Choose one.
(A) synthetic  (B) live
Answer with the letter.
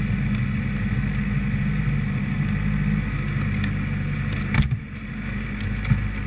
B